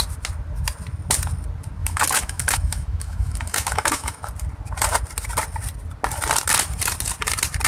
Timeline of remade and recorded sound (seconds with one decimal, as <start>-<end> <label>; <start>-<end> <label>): 0.0-1.8 recorded; 1.8-4.3 remade; 4.3-7.7 recorded

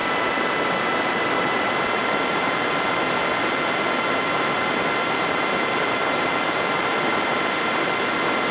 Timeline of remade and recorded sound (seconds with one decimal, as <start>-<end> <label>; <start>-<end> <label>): 0.0-8.5 recorded